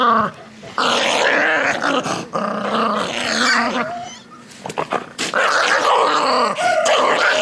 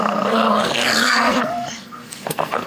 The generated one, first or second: second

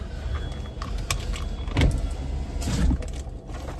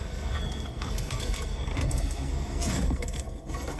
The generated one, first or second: second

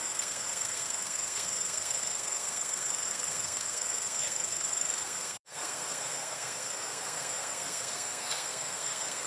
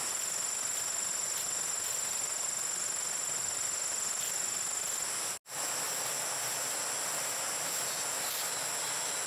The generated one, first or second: first